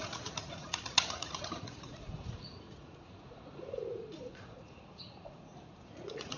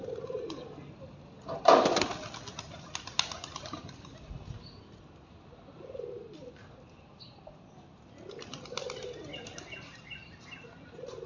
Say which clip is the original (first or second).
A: second